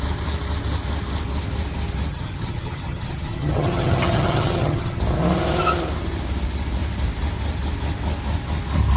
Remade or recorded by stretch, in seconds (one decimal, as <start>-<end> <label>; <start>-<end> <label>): 0.0-2.1 recorded; 2.1-5.0 remade; 5.0-9.0 recorded